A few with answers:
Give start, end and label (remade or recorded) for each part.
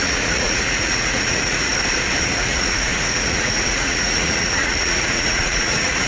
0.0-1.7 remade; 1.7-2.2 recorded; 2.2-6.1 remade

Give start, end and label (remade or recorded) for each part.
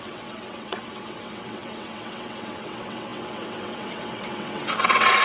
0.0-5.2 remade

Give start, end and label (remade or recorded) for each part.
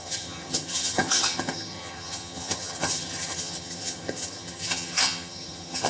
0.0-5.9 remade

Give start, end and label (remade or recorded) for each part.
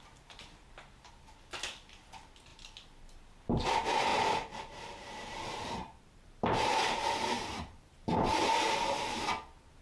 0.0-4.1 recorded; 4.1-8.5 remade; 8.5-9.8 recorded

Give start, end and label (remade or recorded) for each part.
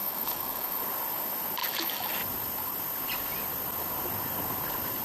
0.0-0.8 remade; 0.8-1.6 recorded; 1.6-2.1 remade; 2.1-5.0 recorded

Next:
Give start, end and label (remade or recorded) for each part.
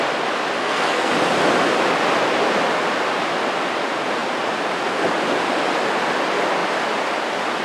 0.0-0.6 recorded; 0.6-1.1 remade; 1.1-7.6 recorded